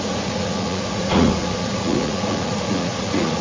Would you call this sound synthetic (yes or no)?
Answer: yes